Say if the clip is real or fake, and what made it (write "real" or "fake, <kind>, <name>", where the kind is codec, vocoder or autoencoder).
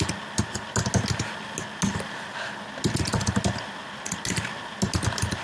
real